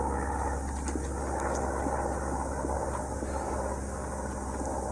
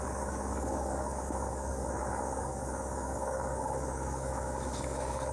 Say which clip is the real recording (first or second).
first